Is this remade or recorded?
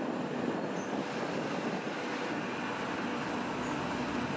recorded